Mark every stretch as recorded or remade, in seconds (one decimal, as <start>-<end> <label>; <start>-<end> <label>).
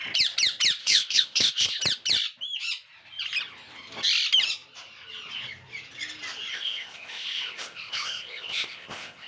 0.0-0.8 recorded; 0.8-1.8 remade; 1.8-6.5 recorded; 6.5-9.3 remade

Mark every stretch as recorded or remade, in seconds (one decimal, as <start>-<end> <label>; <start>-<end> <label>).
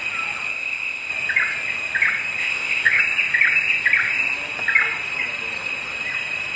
0.0-0.5 recorded; 0.5-1.1 remade; 1.1-2.4 recorded; 2.4-3.0 remade; 3.0-6.6 recorded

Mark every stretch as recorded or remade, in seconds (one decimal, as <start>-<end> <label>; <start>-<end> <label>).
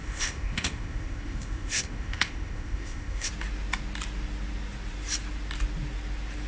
0.0-3.3 remade; 3.3-6.5 recorded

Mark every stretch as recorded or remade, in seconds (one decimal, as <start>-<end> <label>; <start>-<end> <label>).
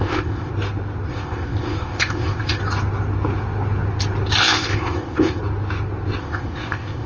0.0-0.5 remade; 0.5-1.1 recorded; 1.1-2.6 remade; 2.6-4.4 recorded; 4.4-5.4 remade; 5.4-6.2 recorded; 6.2-7.1 remade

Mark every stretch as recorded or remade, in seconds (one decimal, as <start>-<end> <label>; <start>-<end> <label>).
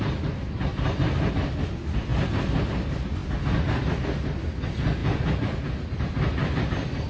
0.0-7.1 recorded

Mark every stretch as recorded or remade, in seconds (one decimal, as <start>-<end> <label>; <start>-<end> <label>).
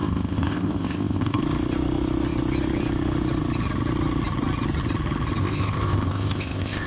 0.0-1.4 remade; 1.4-5.4 recorded; 5.4-6.9 remade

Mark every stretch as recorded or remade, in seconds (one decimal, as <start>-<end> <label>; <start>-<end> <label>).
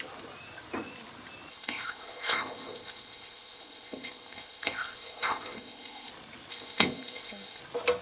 0.0-1.5 recorded; 1.5-6.1 remade; 6.1-6.5 recorded; 6.5-7.6 remade; 7.6-8.0 recorded